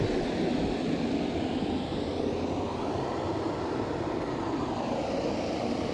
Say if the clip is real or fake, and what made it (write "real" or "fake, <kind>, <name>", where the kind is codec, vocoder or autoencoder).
real